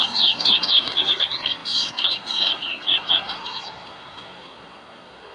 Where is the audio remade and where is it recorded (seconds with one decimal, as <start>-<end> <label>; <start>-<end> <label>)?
0.0-5.3 remade

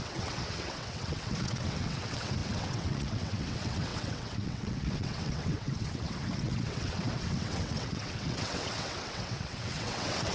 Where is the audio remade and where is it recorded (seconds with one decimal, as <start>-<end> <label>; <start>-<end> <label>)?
0.0-10.3 remade

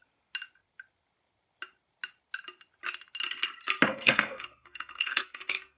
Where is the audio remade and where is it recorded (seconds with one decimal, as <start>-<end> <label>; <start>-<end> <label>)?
0.0-3.9 recorded; 3.9-5.8 remade

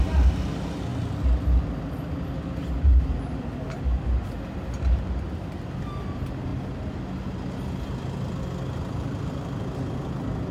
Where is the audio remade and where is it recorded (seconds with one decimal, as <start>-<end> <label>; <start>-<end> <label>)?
0.0-10.5 recorded

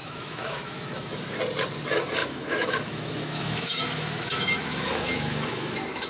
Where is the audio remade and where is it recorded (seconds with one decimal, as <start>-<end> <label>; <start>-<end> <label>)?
0.0-1.2 remade; 1.2-2.2 recorded; 2.2-6.1 remade